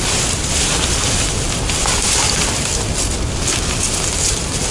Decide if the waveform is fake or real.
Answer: real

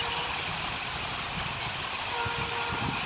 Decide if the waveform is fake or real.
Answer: real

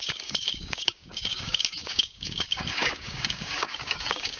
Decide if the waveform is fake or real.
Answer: fake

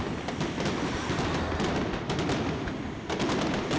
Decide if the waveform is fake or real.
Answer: real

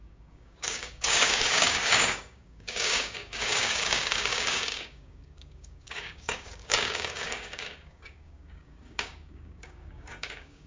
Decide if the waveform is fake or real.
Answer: fake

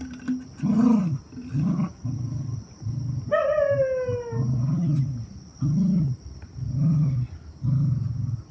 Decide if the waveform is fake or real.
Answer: real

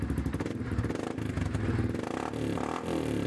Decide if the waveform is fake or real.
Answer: real